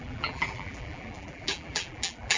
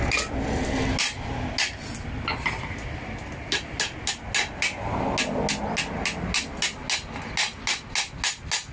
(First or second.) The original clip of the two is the second